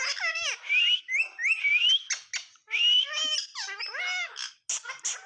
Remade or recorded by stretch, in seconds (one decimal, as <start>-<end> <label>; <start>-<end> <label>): 0.0-5.3 recorded